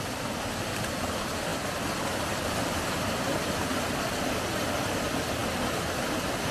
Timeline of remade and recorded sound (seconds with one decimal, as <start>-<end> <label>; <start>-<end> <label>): 0.0-6.5 recorded